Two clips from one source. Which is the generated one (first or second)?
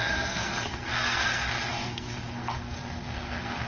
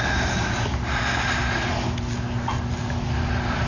first